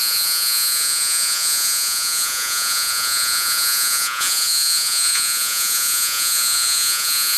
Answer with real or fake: fake